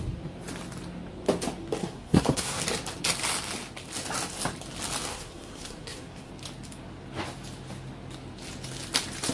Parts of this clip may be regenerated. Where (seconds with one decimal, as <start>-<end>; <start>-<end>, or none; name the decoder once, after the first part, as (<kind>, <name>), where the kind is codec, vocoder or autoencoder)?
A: 1.8-2.6 (codec, SNAC); 5.1-6.3

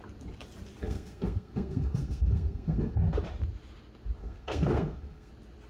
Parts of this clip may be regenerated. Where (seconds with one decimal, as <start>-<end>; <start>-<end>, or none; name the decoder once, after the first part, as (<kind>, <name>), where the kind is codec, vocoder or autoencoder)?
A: 0.8-3.0 (codec, SNAC); 4.2-5.3

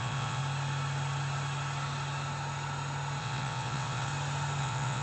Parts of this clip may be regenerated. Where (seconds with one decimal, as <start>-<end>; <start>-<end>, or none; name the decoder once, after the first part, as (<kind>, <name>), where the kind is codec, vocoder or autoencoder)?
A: 0.0-0.4 (vocoder, WaveNeXt); 3.2-4.1; 4.6-5.0

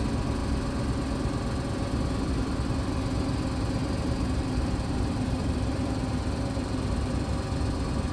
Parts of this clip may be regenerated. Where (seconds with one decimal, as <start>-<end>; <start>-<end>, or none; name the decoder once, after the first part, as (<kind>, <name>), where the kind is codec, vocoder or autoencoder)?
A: 3.8-7.3 (vocoder, BigVGAN v2)

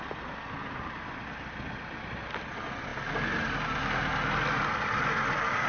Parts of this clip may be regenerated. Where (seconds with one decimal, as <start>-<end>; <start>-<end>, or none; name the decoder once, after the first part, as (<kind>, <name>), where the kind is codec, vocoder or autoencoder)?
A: none